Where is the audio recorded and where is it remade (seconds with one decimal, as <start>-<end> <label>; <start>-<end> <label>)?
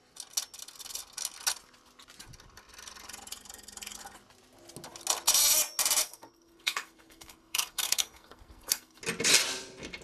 0.0-6.0 recorded; 6.0-9.0 remade; 9.0-10.0 recorded